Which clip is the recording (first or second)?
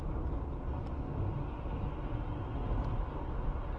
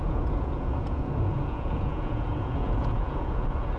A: first